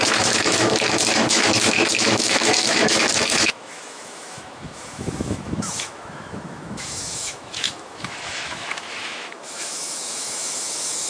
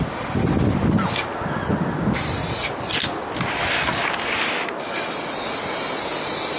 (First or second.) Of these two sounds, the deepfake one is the first